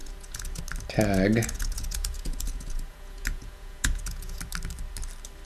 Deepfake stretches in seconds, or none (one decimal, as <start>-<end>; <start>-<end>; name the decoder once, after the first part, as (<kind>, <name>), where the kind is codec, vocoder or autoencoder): 0.0-0.6 (vocoder, Vocos); 1.3-4.4